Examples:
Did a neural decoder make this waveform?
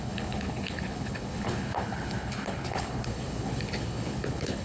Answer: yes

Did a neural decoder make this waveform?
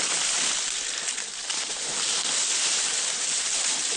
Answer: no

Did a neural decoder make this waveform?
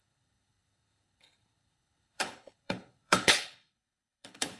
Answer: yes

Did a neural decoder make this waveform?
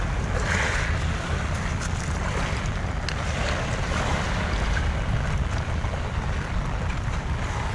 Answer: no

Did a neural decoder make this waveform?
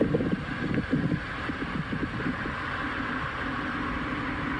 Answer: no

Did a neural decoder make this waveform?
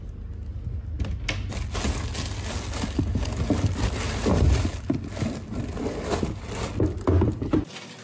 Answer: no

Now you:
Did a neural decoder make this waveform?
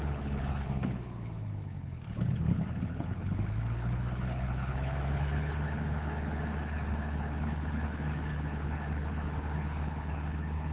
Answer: yes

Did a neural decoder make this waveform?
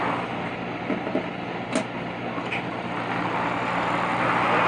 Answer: no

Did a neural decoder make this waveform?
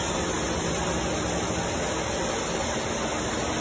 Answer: no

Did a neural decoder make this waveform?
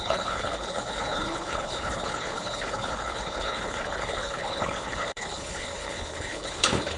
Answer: yes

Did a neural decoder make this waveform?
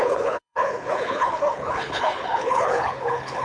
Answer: yes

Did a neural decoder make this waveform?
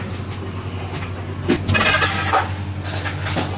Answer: no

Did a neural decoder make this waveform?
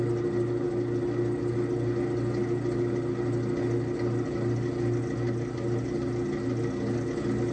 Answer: no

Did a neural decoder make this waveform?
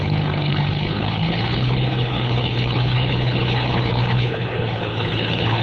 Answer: yes